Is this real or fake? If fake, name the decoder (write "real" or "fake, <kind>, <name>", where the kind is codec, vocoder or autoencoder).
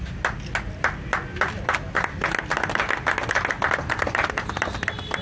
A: real